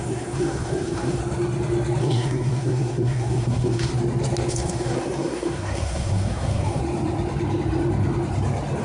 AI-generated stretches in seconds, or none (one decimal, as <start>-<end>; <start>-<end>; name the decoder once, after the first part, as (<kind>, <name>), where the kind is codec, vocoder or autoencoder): 0.0-1.2 (codec, SNAC); 2.0-3.9; 4.5-6.8